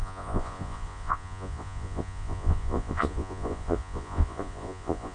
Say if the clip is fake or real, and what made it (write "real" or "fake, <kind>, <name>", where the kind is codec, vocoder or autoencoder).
fake, vocoder, Vocos